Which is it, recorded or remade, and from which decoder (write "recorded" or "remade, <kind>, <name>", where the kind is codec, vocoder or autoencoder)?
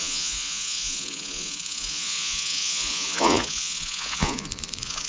remade, vocoder, Vocos